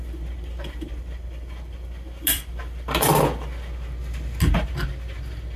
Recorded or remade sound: recorded